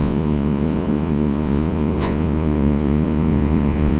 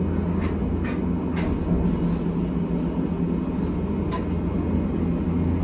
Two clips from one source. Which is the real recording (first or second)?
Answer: second